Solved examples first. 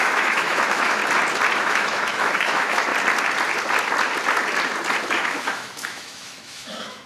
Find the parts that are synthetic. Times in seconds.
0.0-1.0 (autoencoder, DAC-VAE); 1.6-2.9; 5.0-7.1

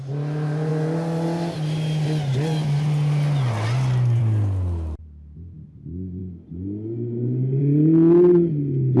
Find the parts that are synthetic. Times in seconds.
none

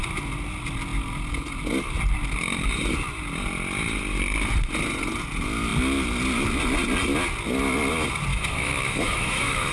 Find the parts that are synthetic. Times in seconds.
8.3-9.7 (autoencoder, DAC-VAE)

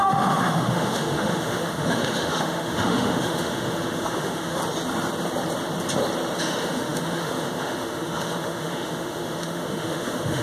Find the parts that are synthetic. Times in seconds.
0.0-4.6 (autoencoder, DAC-VAE); 6.4-10.4